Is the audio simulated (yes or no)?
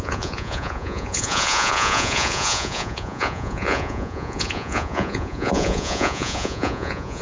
yes